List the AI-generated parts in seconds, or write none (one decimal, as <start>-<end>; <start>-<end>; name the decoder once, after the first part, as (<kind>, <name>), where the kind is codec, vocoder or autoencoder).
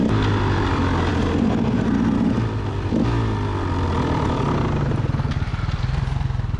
none